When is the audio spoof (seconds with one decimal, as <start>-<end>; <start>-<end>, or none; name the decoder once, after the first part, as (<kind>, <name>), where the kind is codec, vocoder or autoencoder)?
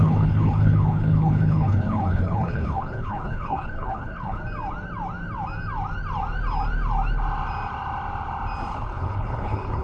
0.0-4.4 (codec, HILCodec); 8.7-9.8